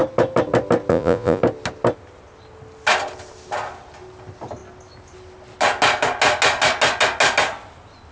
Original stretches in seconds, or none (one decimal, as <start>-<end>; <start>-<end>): 0.0-0.9; 1.4-8.1